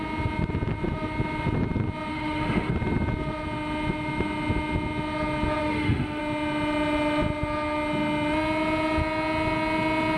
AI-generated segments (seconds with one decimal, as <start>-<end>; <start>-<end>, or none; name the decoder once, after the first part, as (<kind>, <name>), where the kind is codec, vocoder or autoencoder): 2.1-2.7 (autoencoder, DAC-VAE); 5.6-6.2